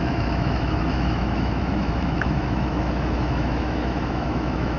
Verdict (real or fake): fake